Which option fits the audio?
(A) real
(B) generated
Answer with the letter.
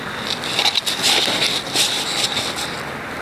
A